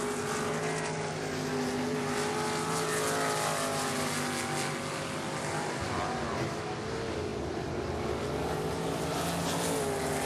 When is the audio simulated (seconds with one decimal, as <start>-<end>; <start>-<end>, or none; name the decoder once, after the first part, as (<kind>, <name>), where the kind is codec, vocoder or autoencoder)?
none